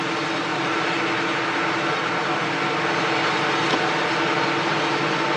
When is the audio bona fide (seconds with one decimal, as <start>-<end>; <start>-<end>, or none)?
0.0-0.5; 1.0-5.4